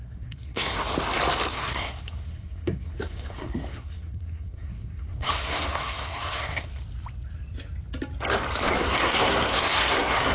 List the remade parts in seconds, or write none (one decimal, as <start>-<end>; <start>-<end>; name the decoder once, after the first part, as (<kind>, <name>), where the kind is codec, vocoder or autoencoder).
0.0-0.9 (codec, SNAC); 1.5-6.7; 8.6-10.3